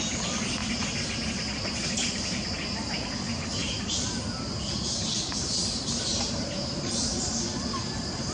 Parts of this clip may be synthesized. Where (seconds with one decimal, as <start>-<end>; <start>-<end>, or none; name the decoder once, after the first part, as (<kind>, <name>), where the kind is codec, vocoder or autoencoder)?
3.6-4.2 (vocoder, BigVGAN v2); 6.1-7.3